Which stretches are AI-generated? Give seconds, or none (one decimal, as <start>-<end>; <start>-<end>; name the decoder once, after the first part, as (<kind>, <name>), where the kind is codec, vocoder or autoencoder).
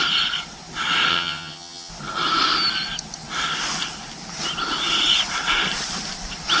1.1-1.9 (vocoder, HiFi-GAN)